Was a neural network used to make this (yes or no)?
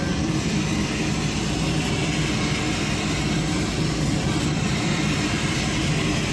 yes